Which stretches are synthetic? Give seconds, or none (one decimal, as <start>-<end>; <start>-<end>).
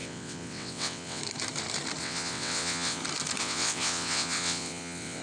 0.0-1.2; 2.0-3.0; 3.4-5.2